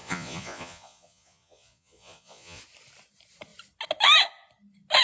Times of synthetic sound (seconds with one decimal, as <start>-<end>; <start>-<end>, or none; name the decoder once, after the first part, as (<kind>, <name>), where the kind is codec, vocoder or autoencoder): 0.0-2.6 (vocoder, Vocos)